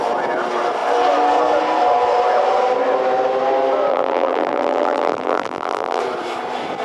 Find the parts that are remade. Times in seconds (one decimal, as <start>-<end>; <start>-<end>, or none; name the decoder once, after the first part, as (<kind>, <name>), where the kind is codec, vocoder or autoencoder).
3.9-6.0 (vocoder, BigVGAN v2)